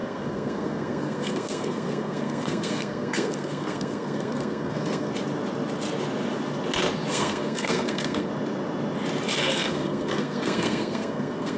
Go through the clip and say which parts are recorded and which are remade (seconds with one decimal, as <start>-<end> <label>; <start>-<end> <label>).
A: 0.0-5.1 remade; 5.1-7.1 recorded; 7.1-8.3 remade; 8.3-9.4 recorded; 9.4-11.6 remade